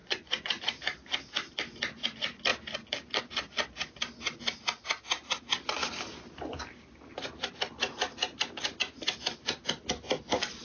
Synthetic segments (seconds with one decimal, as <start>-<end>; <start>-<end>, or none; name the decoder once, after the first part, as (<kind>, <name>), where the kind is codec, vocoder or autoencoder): 0.0-0.6 (vocoder, Vocos)